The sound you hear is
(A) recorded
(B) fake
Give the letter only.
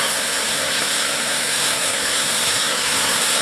B